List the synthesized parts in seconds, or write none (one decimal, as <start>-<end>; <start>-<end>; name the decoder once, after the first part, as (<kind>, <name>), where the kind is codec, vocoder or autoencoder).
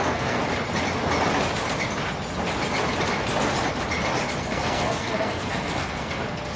0.0-0.4 (codec, SNAC); 4.4-6.6